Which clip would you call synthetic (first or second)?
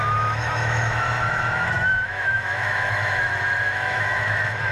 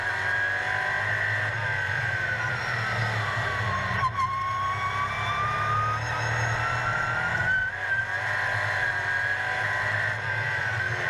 first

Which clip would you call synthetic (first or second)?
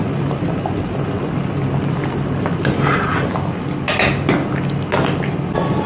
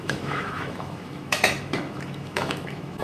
second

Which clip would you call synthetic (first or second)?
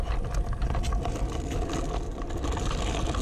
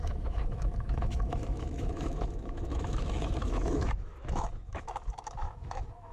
second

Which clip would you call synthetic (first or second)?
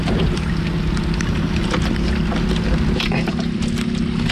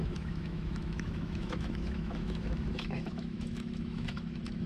second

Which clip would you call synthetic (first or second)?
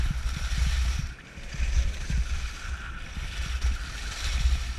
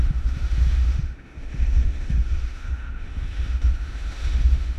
second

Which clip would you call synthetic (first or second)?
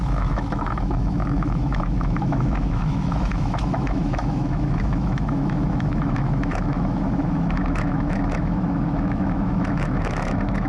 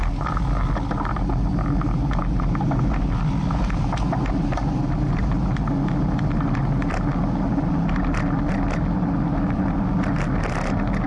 first